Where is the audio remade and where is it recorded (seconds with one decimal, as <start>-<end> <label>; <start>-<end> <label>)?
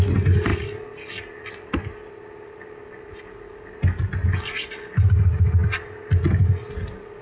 0.0-7.2 recorded